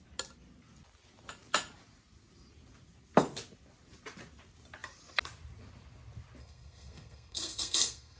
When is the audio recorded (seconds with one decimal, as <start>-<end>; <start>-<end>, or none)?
0.0-6.4